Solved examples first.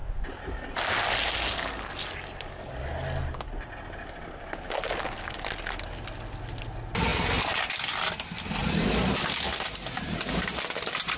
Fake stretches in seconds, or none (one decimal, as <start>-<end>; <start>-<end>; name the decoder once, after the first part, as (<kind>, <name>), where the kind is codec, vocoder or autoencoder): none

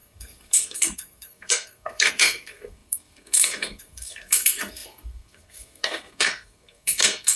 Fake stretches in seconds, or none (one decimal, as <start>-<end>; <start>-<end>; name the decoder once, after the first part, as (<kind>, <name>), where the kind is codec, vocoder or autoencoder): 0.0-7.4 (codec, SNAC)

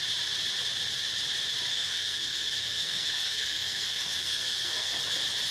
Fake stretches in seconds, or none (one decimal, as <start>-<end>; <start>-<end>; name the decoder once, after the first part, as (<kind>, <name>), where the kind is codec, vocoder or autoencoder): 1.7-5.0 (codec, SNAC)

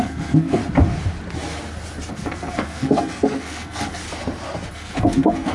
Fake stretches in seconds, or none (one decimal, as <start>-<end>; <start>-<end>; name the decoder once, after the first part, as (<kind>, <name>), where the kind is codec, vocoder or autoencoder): 0.0-0.6 (codec, SNAC); 2.1-4.0; 4.7-5.5